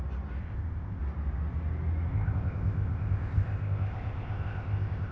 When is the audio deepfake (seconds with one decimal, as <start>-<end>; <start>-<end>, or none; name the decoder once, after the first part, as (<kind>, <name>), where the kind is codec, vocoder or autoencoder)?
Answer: 0.4-1.0 (codec, ZipCodec); 2.1-5.1